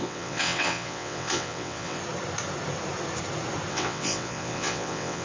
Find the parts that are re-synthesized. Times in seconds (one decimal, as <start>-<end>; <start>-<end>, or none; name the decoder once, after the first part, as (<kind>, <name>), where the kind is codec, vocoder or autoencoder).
0.0-2.0 (vocoder, WaveNeXt); 3.7-5.2